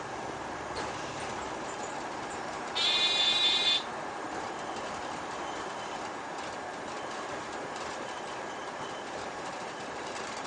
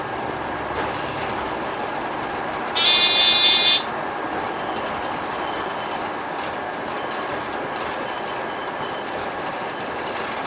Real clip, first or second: second